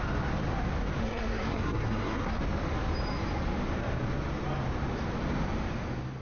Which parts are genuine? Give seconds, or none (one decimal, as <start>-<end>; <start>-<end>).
0.0-1.0; 2.4-6.2